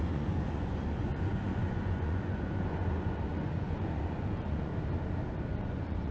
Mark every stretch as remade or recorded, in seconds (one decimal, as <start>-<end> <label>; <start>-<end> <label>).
0.0-4.7 remade; 4.7-5.6 recorded; 5.6-6.1 remade